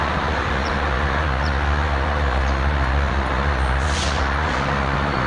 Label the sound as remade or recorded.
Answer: remade